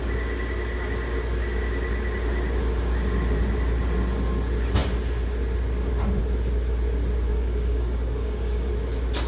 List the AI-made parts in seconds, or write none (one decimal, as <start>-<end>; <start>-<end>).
7.3-8.7